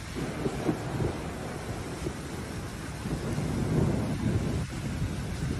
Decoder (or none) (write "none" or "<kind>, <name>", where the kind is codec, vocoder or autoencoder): none